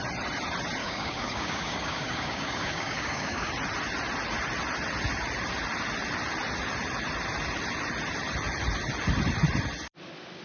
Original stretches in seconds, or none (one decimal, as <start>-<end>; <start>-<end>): 0.0-0.8; 3.5-10.4